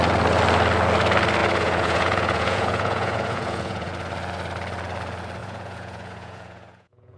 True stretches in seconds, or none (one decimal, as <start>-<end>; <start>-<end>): 0.0-1.4; 3.9-5.4